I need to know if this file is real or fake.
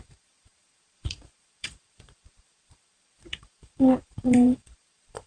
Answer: fake